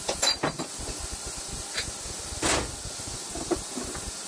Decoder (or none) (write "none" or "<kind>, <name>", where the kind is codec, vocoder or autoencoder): none